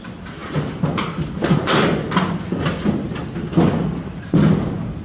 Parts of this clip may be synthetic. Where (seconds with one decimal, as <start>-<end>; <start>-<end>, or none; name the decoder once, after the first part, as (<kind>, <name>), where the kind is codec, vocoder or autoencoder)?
none